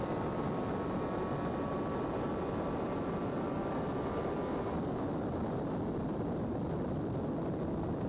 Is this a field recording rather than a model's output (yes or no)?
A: yes